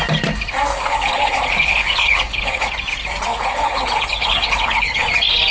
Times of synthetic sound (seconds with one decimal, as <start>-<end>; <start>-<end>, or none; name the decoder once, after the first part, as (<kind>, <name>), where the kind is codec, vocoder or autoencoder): 0.7-2.7 (codec, HILCodec); 3.3-5.1